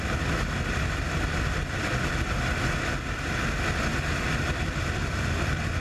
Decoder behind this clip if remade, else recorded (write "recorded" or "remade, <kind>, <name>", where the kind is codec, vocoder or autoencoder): remade, vocoder, BigVGAN v2